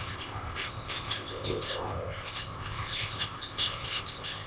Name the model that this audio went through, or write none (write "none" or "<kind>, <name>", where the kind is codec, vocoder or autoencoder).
codec, ZipCodec